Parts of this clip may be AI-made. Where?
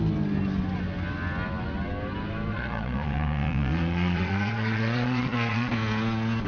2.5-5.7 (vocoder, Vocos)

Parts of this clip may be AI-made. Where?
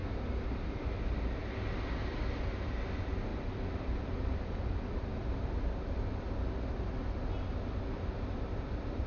3.3-5.7 (vocoder, BigVGAN v2)